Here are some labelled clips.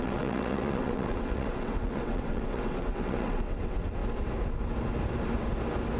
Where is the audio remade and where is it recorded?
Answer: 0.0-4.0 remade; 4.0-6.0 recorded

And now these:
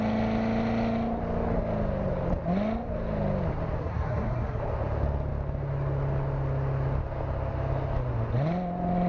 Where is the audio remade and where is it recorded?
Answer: 0.0-3.8 recorded; 3.8-4.6 remade; 4.6-9.1 recorded